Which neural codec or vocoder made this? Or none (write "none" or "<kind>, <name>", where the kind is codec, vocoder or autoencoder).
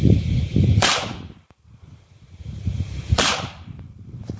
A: vocoder, BigVGAN v2